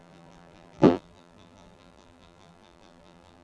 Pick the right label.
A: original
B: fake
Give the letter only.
B